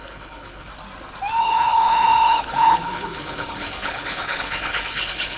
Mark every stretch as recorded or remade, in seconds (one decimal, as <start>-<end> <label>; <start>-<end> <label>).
0.0-0.7 remade; 0.7-1.4 recorded; 1.4-5.4 remade